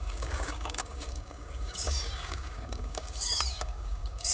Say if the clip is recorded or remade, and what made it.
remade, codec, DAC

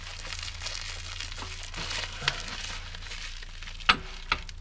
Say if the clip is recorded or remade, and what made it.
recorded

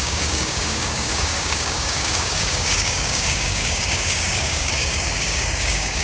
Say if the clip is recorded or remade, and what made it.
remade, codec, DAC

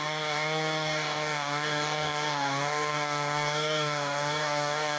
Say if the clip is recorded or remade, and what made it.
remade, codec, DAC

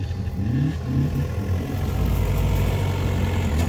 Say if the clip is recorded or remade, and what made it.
recorded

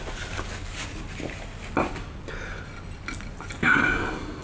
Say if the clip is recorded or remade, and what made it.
recorded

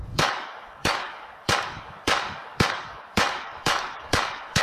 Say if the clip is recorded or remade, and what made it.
remade, codec, DAC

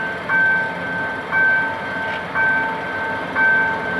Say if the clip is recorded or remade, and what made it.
recorded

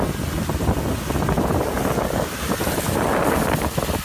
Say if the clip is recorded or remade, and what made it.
recorded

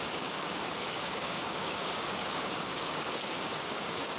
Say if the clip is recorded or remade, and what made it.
remade, codec, DAC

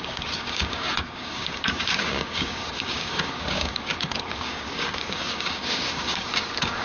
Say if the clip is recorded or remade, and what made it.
remade, codec, DAC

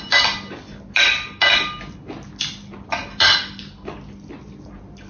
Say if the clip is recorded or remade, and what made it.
recorded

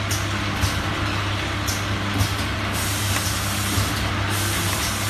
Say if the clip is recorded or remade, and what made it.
recorded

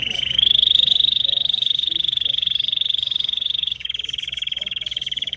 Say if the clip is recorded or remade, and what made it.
remade, codec, DAC